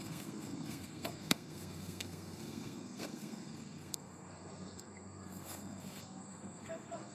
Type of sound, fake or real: fake